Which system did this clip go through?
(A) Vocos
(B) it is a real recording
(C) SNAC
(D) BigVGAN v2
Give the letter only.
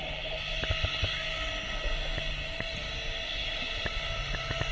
B